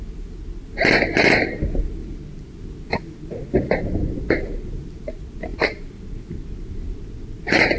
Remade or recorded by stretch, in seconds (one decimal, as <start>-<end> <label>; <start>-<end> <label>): 0.0-7.8 recorded